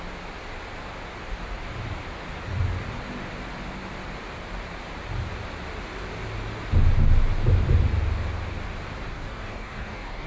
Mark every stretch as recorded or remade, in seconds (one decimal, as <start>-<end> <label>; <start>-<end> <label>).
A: 0.0-9.1 recorded; 9.1-10.3 remade